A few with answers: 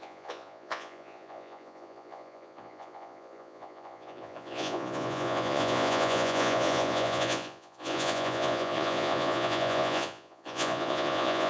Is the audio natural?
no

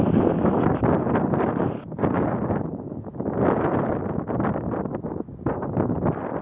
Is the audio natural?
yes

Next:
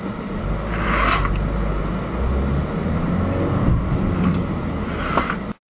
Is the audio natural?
yes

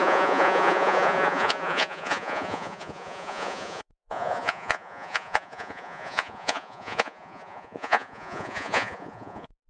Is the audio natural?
no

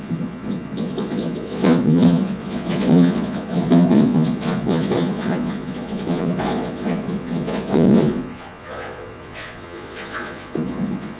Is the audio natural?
no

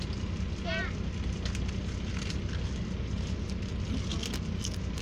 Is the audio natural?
yes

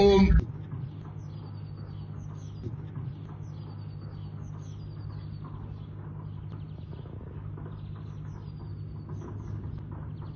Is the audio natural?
yes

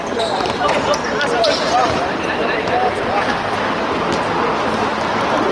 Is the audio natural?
yes